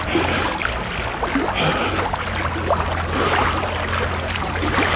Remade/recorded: recorded